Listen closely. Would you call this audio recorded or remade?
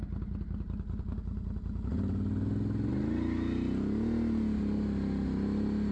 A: recorded